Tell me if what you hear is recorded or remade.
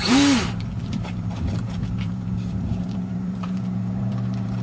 remade